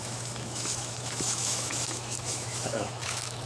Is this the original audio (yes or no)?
no